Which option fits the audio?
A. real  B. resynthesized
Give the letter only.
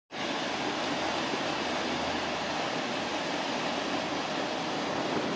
A